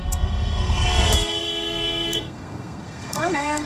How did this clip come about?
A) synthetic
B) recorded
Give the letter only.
A